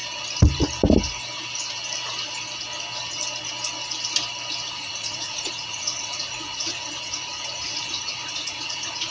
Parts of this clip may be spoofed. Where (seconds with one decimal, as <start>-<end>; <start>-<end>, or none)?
4.7-9.1